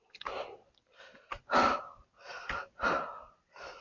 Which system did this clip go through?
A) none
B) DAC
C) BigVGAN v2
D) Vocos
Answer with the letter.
A